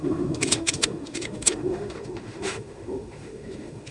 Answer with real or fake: fake